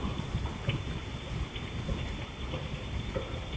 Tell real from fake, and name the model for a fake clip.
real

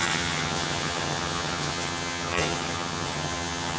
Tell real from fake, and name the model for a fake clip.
fake, vocoder, HiFi-GAN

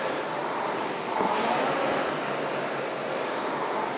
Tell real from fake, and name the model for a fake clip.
real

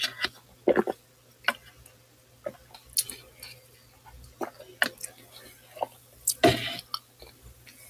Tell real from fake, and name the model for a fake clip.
real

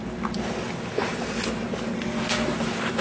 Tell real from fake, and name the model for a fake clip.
real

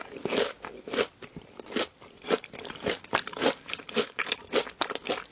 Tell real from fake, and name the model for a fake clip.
real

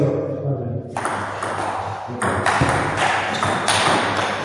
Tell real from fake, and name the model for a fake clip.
real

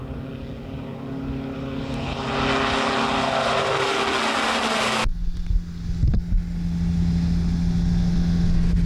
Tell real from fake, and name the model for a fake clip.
real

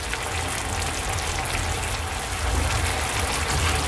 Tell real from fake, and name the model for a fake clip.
real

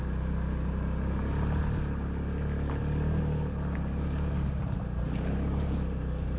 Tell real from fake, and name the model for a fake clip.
real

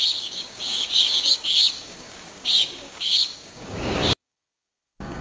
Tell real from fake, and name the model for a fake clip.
fake, codec, DAC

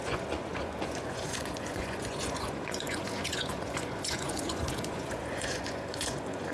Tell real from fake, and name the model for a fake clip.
fake, vocoder, Vocos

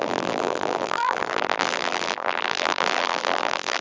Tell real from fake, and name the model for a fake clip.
fake, vocoder, BigVGAN v2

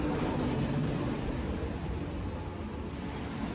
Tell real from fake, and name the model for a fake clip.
real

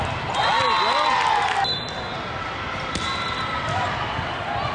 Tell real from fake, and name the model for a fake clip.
real